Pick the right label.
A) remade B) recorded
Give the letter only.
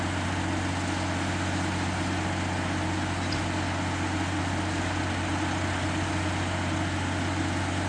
B